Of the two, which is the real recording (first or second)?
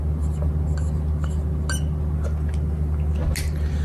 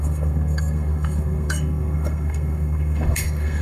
first